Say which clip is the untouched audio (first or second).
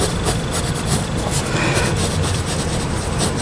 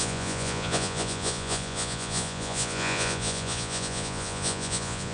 first